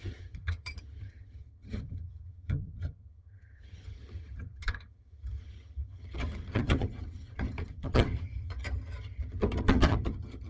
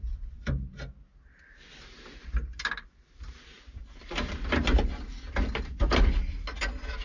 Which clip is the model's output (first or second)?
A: first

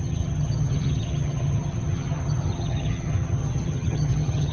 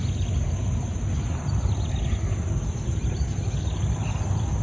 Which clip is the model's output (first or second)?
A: first